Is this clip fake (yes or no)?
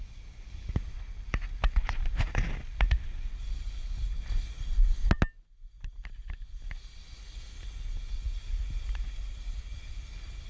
no